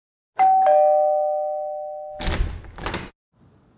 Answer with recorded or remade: recorded